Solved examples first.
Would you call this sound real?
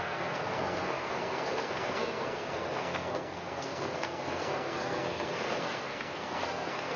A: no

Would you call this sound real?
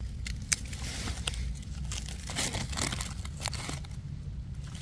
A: yes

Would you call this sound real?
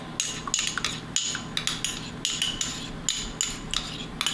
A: yes